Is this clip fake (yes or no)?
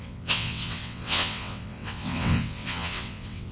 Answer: yes